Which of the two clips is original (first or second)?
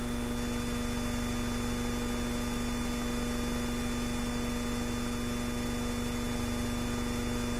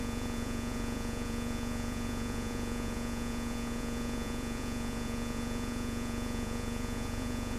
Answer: first